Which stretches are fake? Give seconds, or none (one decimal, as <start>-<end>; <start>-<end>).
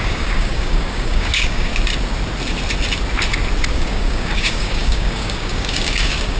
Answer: 0.0-1.7; 3.7-6.4